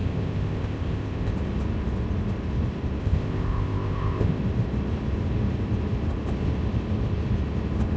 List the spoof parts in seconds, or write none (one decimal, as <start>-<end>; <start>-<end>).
0.0-1.3; 3.0-4.4